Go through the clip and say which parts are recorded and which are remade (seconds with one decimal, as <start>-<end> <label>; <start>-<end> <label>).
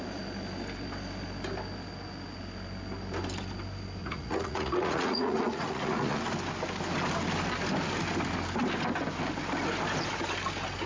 0.0-4.0 recorded; 4.0-6.2 remade; 6.2-10.9 recorded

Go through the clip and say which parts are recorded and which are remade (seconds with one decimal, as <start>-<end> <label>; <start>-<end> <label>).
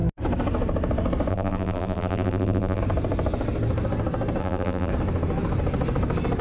0.0-1.3 recorded; 1.3-2.8 remade; 2.8-4.4 recorded; 4.4-4.9 remade; 4.9-6.4 recorded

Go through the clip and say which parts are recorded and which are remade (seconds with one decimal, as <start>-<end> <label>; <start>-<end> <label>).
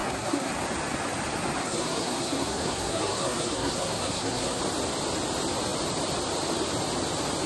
0.0-0.5 remade; 0.5-1.6 recorded; 1.6-4.6 remade; 4.6-7.5 recorded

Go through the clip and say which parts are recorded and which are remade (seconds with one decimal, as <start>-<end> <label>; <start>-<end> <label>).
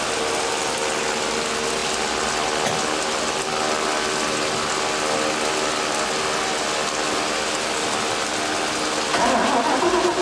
0.0-10.2 recorded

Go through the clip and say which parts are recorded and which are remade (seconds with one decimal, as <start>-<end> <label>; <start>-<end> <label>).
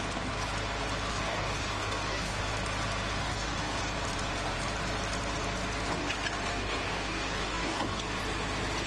0.0-1.1 recorded; 1.1-2.4 remade; 2.4-3.2 recorded; 3.2-3.8 remade; 3.8-6.5 recorded; 6.5-8.0 remade; 8.0-8.9 recorded